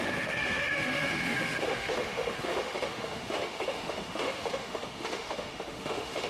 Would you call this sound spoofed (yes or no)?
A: yes